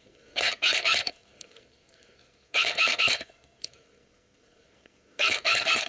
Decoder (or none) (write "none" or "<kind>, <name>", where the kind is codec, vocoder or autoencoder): codec, SNAC